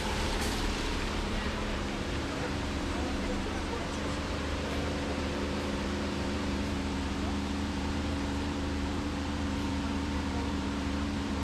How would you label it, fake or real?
fake